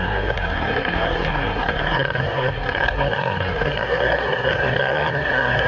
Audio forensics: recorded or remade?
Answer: remade